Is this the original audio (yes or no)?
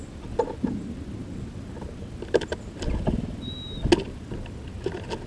yes